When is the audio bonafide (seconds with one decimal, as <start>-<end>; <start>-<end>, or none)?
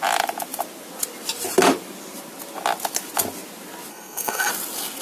0.0-3.9; 4.5-5.0